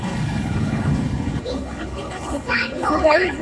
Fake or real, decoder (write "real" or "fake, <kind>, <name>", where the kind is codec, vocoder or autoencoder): fake, codec, HILCodec